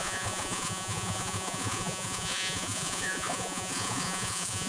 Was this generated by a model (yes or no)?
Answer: yes